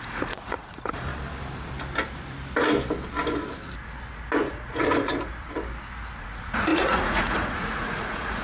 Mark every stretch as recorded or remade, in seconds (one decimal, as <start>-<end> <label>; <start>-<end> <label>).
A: 0.0-1.1 remade; 1.1-4.5 recorded; 4.5-5.1 remade; 5.1-6.2 recorded; 6.2-8.4 remade